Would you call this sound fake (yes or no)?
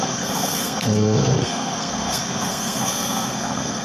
yes